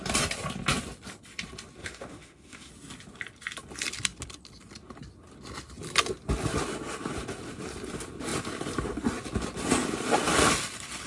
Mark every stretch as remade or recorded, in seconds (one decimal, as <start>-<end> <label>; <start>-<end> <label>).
0.0-1.8 recorded; 1.8-2.7 remade; 2.7-11.1 recorded